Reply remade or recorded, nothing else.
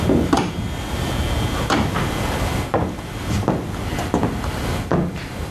recorded